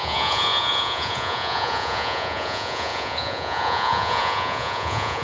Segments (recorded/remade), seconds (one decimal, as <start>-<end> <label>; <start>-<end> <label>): 0.0-5.2 remade